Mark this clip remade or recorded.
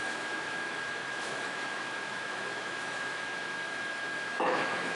remade